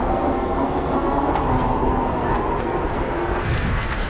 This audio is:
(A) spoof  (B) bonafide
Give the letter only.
A